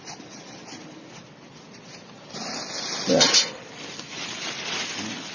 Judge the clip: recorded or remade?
recorded